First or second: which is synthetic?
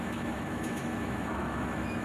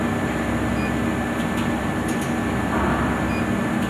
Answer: first